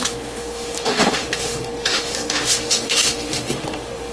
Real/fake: fake